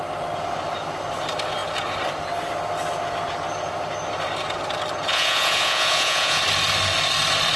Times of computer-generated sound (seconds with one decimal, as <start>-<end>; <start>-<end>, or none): 5.1-6.4